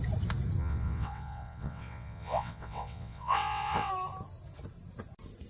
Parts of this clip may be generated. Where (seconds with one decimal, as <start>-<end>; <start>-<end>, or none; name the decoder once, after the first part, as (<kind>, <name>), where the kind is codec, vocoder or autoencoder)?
0.6-3.9 (vocoder, WaveNeXt)